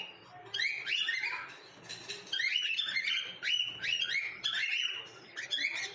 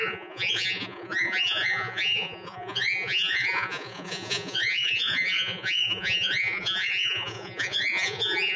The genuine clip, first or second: first